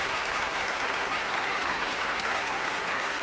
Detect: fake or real fake